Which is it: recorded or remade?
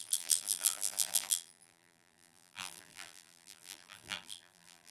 remade